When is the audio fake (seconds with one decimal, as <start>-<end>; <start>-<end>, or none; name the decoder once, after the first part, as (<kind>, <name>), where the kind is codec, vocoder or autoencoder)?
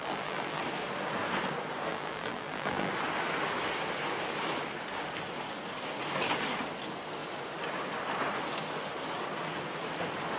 0.0-0.6 (vocoder, BigVGAN v2); 1.9-2.9